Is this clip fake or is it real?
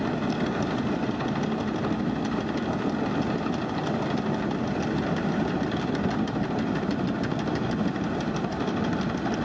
real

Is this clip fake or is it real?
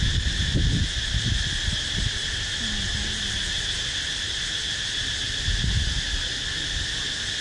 real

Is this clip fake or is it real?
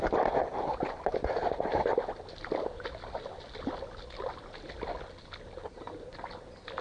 real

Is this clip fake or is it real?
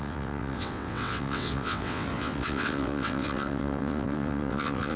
fake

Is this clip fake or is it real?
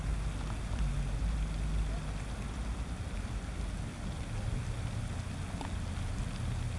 real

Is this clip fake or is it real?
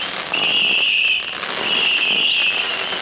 real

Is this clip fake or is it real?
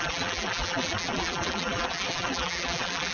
fake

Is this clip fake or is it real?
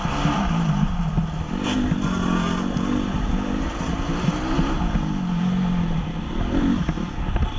real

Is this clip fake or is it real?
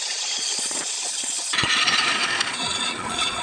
fake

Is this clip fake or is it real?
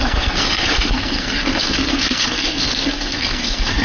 fake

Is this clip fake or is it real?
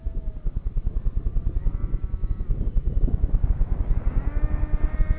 real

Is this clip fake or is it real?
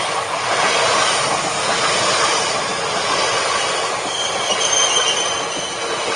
real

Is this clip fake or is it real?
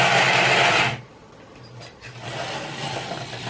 real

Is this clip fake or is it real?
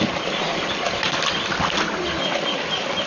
real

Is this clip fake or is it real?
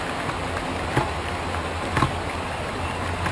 real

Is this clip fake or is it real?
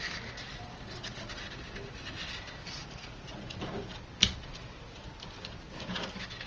real